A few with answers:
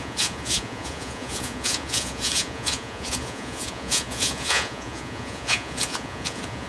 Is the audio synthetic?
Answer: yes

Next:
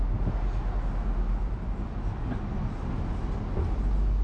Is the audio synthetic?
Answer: no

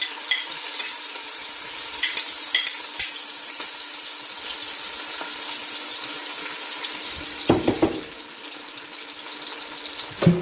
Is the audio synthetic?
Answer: no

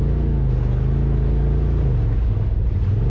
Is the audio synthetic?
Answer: no